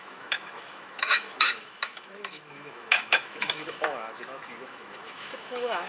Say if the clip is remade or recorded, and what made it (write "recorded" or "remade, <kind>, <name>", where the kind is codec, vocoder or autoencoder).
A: remade, autoencoder, DAC-VAE